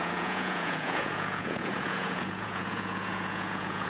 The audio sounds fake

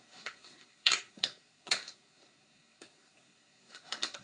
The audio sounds fake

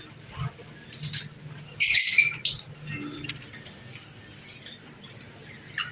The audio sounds real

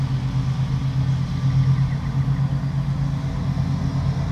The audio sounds real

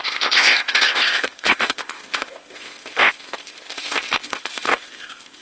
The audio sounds fake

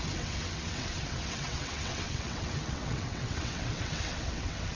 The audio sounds fake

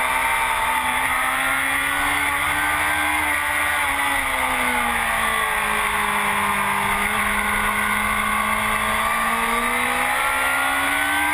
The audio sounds real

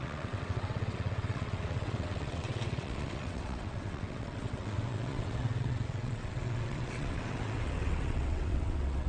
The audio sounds fake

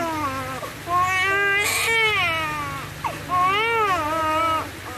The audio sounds real